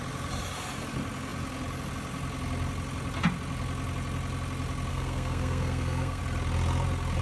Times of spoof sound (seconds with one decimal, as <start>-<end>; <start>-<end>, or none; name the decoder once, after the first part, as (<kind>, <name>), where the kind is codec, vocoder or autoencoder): 4.9-6.2 (codec, SNAC)